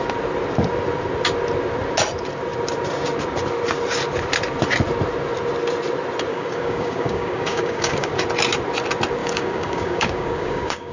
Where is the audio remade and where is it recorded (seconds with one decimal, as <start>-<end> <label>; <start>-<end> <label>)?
0.0-6.3 recorded; 6.3-8.1 remade; 8.1-9.2 recorded; 9.2-10.9 remade